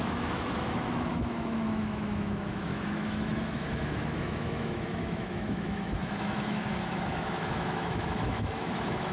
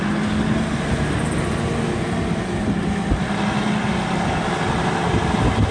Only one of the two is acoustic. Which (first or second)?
second